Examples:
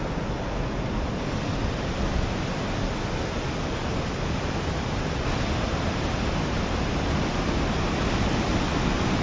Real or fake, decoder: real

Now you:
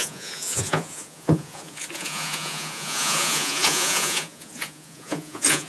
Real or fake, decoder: fake, vocoder, Vocos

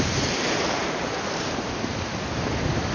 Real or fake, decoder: real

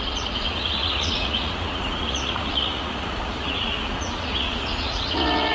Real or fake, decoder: fake, vocoder, Vocos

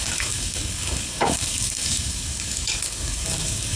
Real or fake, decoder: fake, codec, DAC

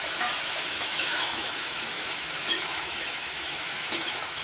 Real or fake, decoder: fake, autoencoder, DAC-VAE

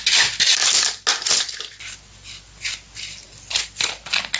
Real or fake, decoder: real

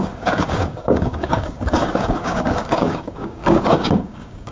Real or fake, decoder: fake, codec, DAC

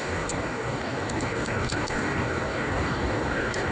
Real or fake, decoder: fake, codec, DAC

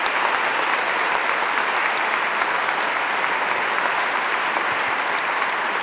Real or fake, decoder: real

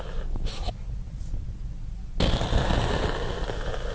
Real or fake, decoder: real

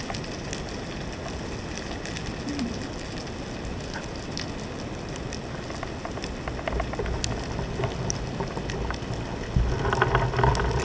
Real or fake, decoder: real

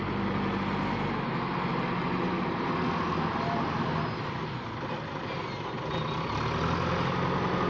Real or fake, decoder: real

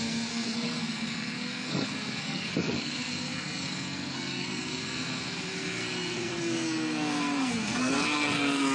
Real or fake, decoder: fake, codec, SNAC